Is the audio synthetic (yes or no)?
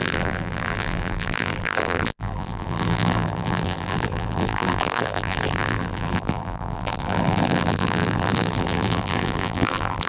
yes